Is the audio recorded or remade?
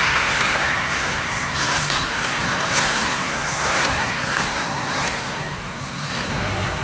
remade